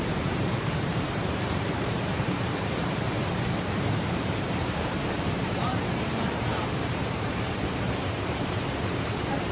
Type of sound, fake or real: fake